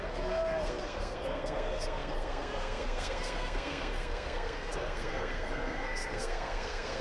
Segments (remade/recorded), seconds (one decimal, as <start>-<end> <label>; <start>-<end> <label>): 0.0-7.0 remade